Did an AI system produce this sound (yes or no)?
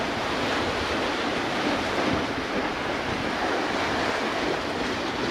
no